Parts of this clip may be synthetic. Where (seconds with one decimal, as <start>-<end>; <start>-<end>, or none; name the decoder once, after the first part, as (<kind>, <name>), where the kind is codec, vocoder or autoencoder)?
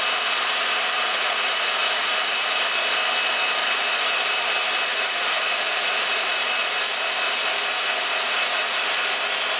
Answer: 1.1-2.7 (vocoder, Vocos); 3.6-4.1; 4.9-6.3; 7.8-8.8